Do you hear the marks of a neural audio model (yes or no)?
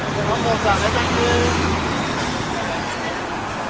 no